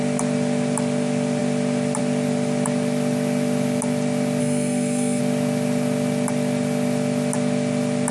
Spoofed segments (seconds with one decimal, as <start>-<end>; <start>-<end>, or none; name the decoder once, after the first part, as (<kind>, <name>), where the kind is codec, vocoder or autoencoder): 4.4-5.2 (codec, SNAC)